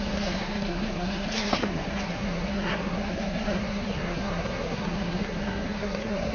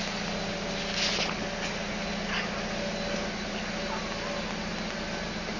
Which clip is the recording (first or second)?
second